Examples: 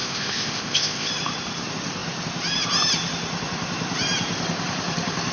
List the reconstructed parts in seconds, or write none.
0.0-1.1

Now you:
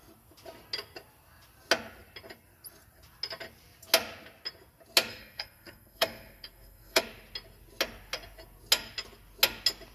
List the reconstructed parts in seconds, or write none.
5.1-7.0

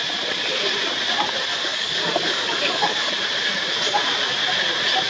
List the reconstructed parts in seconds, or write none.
1.5-3.1

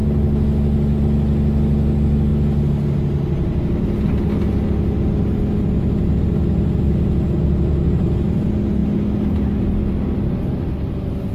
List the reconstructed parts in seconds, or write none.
none